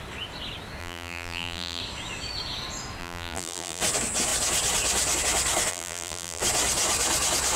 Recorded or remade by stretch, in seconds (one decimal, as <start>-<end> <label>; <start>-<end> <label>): 0.0-0.8 recorded; 0.8-1.8 remade; 1.8-3.0 recorded; 3.0-3.8 remade; 3.8-5.7 recorded; 5.7-6.4 remade; 6.4-7.6 recorded